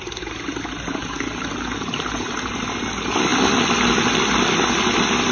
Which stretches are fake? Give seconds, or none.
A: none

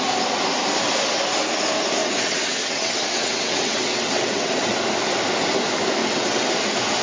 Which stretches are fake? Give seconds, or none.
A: 2.0-4.8; 6.0-6.5